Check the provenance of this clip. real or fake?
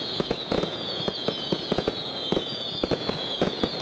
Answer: fake